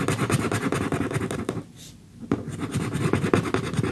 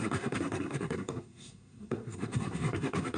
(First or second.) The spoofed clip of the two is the second